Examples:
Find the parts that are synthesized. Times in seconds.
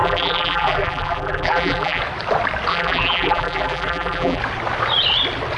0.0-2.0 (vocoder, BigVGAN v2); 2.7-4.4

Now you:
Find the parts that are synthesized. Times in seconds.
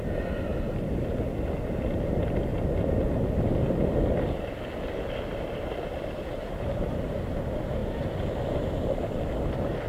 0.0-0.5 (vocoder, BigVGAN v2); 1.7-2.5; 5.8-7.8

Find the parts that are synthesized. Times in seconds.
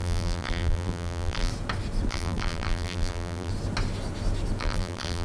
0.0-1.5 (vocoder, BigVGAN v2); 2.1-3.5; 4.6-5.2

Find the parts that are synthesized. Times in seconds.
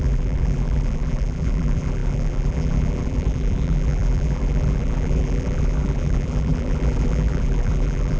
0.0-8.2 (vocoder, BigVGAN v2)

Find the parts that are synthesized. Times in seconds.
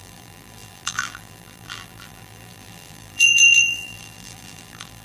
0.0-5.0 (vocoder, BigVGAN v2)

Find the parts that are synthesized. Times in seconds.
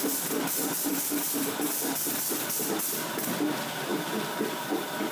0.6-2.4 (vocoder, BigVGAN v2); 3.9-5.1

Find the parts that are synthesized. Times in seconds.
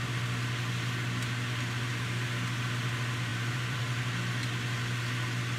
3.3-3.8 (vocoder, BigVGAN v2)